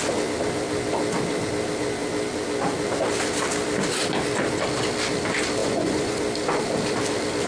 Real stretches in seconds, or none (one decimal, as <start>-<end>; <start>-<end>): 0.0-5.6; 6.2-7.5